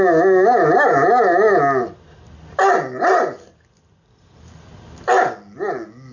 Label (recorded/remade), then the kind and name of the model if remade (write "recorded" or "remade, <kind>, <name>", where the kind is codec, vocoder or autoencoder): recorded